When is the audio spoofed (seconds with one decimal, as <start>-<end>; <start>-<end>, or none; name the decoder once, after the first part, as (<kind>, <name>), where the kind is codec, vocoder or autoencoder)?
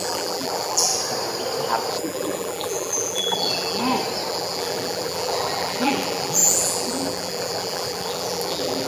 0.0-0.9 (vocoder, BigVGAN v2); 1.9-3.8; 4.3-8.9